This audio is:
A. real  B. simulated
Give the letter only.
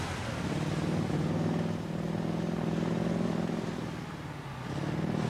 A